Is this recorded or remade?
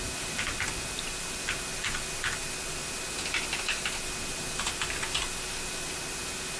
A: recorded